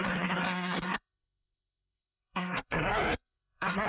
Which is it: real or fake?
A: fake